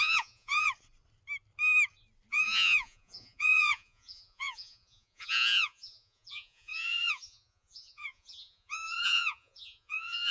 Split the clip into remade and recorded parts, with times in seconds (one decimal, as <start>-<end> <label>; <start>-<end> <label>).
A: 0.0-0.7 remade; 0.7-2.3 recorded; 2.3-10.3 remade